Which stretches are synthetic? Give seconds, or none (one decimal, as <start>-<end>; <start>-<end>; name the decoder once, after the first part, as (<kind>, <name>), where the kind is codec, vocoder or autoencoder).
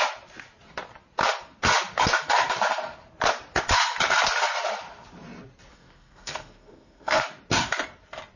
5.7-7.2 (codec, SNAC)